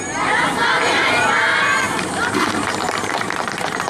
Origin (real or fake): fake